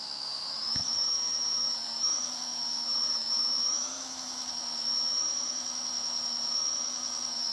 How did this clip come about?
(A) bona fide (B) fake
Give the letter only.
B